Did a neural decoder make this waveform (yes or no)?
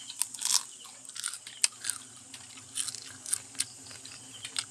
no